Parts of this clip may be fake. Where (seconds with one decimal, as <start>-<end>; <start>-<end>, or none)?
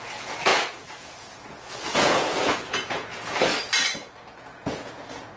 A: 0.0-3.5; 4.4-5.4